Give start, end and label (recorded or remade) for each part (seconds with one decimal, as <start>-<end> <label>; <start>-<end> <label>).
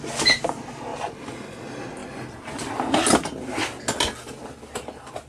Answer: 0.0-5.3 recorded